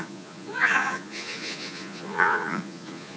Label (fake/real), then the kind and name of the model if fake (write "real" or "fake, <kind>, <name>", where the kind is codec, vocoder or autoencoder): fake, vocoder, Vocos